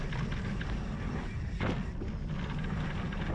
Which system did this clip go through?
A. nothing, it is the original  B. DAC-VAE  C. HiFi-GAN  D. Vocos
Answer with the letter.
A